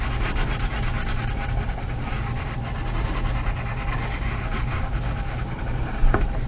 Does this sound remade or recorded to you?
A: recorded